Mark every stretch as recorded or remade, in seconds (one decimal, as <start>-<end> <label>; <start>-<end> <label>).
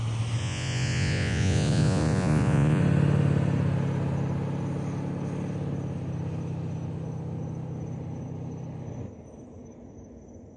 0.0-0.4 recorded; 0.4-2.8 remade; 2.8-10.6 recorded